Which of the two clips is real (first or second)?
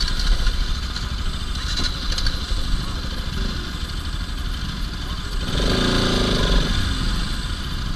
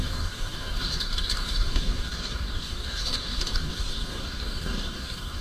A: first